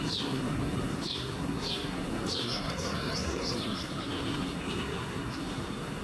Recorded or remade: remade